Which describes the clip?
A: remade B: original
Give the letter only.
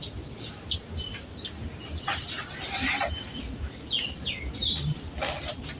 B